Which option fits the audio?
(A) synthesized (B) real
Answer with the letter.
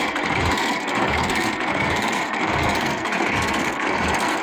A